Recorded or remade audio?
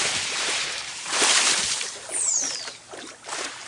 remade